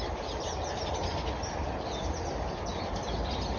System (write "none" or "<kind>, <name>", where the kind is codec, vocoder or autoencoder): none